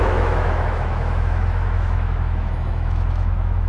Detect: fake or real fake